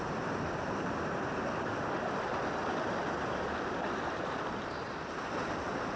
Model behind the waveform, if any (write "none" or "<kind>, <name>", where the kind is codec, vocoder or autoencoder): none